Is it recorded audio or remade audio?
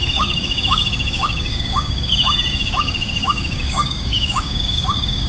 remade